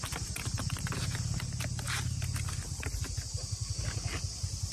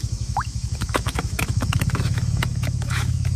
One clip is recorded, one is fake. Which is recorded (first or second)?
first